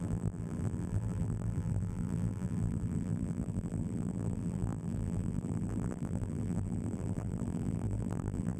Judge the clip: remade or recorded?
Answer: remade